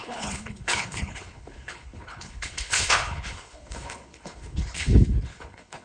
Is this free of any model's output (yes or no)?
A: no